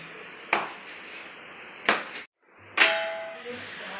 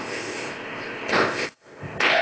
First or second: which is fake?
second